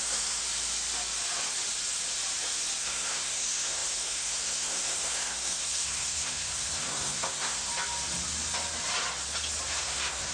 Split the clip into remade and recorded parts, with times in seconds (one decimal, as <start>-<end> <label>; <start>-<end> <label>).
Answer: 0.0-0.4 remade; 0.4-2.8 recorded; 2.8-7.7 remade; 7.7-9.7 recorded; 9.7-10.3 remade